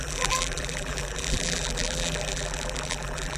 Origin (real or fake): fake